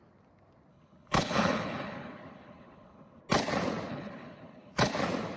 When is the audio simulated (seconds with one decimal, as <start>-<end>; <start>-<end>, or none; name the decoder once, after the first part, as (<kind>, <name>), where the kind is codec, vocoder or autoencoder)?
0.7-3.2 (codec, HILCodec); 3.9-4.9

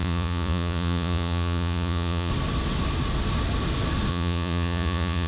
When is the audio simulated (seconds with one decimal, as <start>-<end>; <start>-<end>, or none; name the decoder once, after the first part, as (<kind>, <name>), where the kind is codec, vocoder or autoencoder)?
0.0-2.3 (vocoder, Vocos); 4.1-5.3

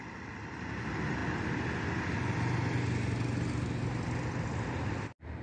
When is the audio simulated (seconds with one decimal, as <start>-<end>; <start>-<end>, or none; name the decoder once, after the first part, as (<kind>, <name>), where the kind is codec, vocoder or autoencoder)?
none

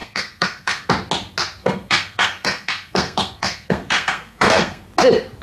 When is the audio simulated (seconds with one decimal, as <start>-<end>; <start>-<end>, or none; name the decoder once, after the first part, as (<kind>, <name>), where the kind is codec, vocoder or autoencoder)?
0.0-0.9 (codec, SNAC); 1.6-4.8

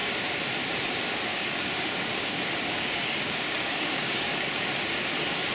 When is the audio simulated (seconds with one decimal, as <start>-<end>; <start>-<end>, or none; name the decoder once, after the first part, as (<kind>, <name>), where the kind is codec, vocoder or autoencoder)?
1.3-4.6 (codec, DAC)

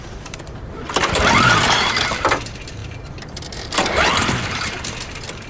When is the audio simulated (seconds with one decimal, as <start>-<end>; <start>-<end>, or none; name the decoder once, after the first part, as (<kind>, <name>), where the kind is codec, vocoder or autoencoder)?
0.0-5.5 (vocoder, BigVGAN v2)

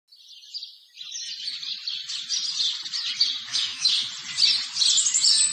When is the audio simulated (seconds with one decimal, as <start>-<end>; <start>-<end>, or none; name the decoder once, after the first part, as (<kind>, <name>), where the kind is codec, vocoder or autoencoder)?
3.5-4.1 (autoencoder, DAC-VAE)